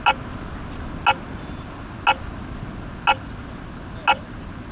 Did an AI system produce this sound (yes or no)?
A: no